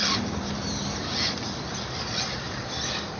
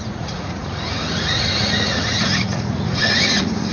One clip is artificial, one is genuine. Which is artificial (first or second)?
second